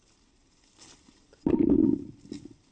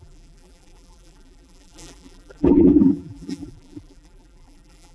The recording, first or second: first